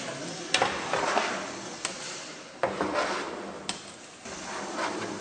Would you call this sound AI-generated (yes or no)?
no